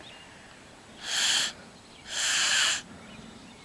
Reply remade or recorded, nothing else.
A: remade